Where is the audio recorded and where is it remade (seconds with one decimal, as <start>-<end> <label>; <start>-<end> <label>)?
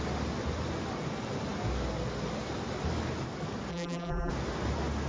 0.0-3.7 recorded; 3.7-4.3 remade; 4.3-5.1 recorded